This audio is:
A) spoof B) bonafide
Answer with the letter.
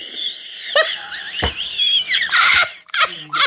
A